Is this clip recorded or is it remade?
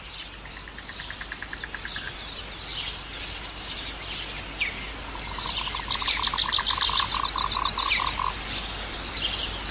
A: recorded